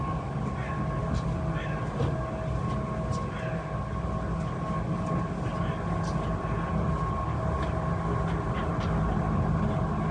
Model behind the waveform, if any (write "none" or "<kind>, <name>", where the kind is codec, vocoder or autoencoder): none